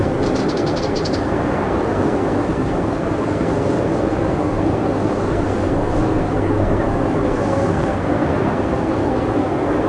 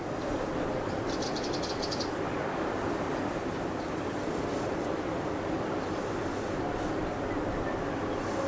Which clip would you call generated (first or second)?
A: first